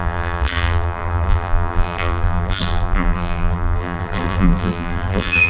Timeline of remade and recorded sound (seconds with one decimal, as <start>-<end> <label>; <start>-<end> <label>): 0.0-5.5 remade